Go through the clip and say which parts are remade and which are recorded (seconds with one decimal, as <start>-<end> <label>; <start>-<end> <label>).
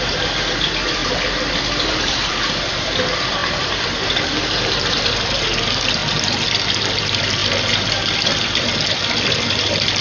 0.0-6.0 remade; 6.0-7.0 recorded; 7.0-7.4 remade; 7.4-7.9 recorded; 7.9-10.0 remade